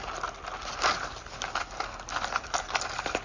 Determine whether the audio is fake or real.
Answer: real